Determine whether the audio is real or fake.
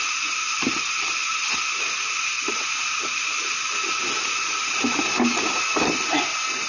real